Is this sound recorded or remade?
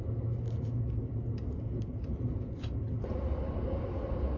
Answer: recorded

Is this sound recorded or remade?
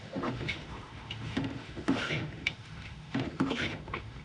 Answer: remade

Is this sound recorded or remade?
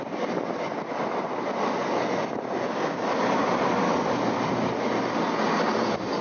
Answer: recorded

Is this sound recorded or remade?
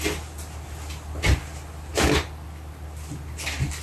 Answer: recorded